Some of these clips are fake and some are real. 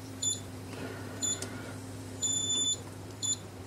fake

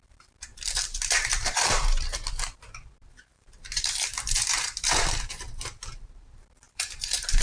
fake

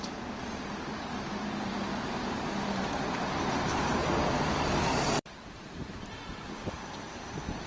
fake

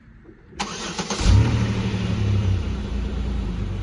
fake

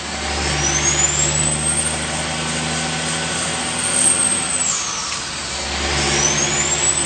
real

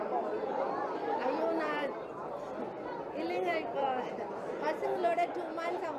fake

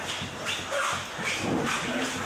real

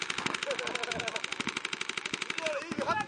real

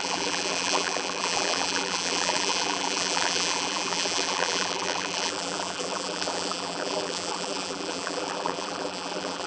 fake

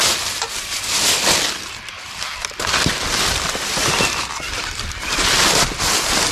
fake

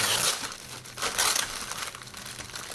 real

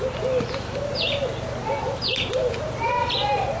fake